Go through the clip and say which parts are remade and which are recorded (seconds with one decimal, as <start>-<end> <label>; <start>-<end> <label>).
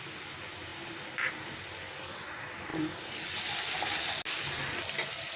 0.0-5.4 recorded